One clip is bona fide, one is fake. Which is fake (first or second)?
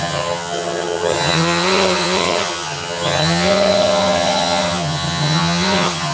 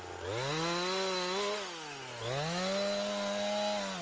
first